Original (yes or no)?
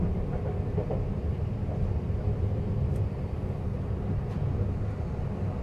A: yes